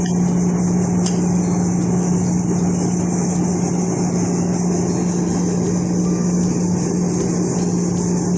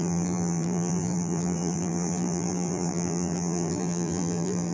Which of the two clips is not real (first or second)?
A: second